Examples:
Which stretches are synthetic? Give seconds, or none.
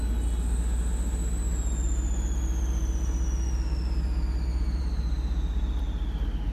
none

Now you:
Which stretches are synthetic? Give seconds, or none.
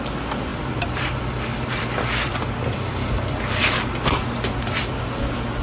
0.5-3.9 (vocoder, BigVGAN v2)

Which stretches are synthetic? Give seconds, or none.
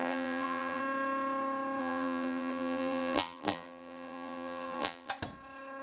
0.0-0.8 (vocoder, BigVGAN v2); 1.8-5.1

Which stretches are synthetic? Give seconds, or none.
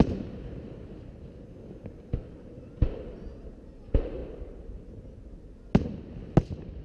none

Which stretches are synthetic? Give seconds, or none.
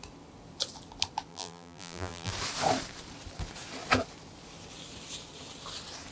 1.3-2.3 (vocoder, BigVGAN v2)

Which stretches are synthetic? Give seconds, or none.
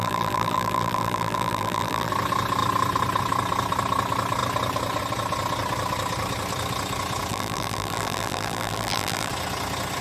0.0-2.1 (vocoder, BigVGAN v2); 7.3-9.3